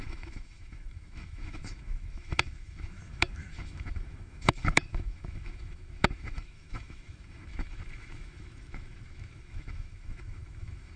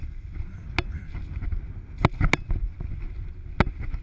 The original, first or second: second